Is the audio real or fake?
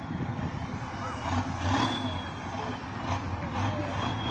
real